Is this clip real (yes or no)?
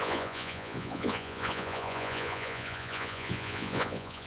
no